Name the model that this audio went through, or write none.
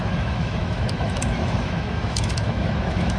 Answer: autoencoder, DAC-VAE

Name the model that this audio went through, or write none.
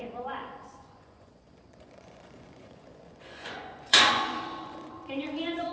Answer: vocoder, Vocos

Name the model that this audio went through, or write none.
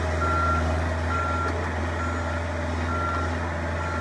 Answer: none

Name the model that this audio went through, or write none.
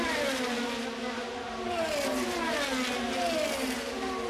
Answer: none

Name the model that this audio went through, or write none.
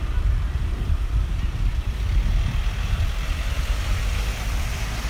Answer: none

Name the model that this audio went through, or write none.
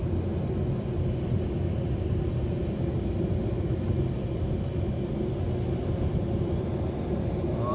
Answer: none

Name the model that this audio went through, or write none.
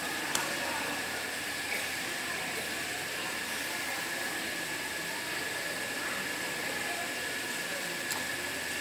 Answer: none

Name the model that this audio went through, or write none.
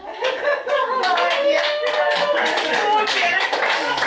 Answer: codec, DAC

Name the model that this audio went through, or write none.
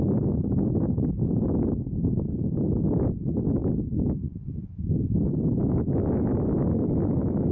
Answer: autoencoder, DAC-VAE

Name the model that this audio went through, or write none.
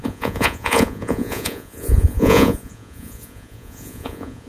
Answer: vocoder, Vocos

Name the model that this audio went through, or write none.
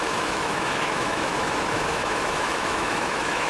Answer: autoencoder, DAC-VAE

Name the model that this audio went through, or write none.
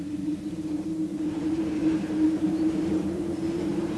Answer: vocoder, BigVGAN v2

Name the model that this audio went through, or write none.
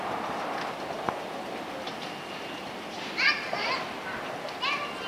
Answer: none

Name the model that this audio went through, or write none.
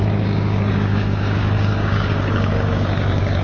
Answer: codec, DAC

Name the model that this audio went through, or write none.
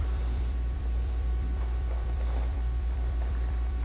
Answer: vocoder, BigVGAN v2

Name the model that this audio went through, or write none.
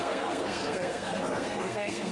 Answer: codec, SNAC